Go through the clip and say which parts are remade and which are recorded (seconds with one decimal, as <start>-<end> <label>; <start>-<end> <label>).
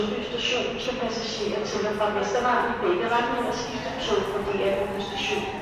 0.0-5.6 recorded